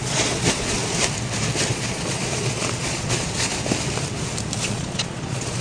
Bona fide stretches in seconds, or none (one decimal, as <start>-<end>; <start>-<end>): 0.8-1.7; 3.5-4.6